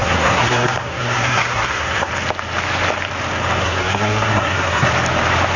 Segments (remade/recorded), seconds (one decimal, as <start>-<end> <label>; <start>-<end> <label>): 0.0-2.1 remade; 2.1-3.6 recorded; 3.6-4.9 remade; 4.9-5.6 recorded